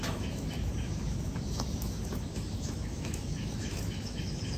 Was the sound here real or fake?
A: fake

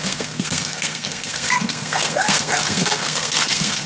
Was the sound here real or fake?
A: fake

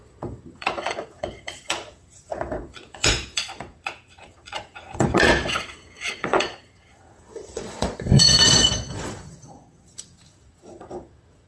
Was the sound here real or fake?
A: fake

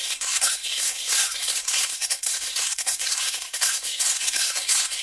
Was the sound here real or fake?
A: fake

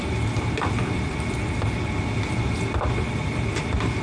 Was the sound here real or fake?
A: real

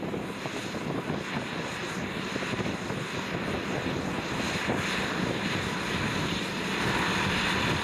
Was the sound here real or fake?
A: real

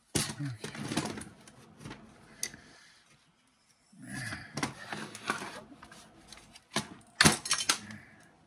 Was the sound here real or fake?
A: real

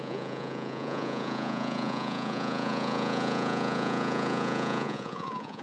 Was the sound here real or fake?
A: fake